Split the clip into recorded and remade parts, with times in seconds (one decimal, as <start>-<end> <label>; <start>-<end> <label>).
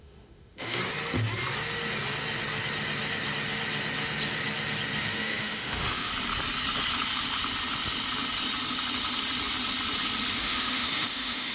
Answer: 0.0-0.8 remade; 0.8-5.0 recorded; 5.0-6.1 remade; 6.1-10.4 recorded; 10.4-11.5 remade